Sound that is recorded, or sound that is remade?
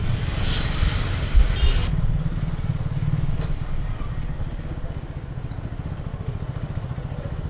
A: recorded